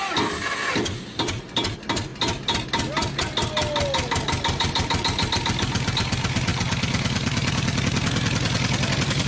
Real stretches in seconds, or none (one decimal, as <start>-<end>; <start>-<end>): 0.0-9.3